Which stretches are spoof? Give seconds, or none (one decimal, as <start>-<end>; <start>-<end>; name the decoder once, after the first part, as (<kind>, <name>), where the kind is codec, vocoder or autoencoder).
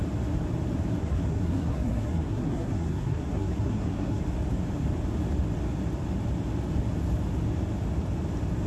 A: 1.0-4.2 (codec, SNAC)